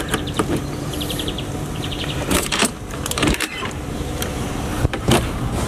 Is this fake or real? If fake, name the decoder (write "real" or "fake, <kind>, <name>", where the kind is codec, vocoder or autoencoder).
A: fake, vocoder, BigVGAN v2